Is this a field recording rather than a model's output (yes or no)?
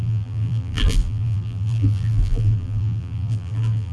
no